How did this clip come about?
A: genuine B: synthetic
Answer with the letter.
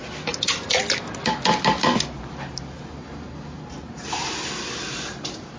A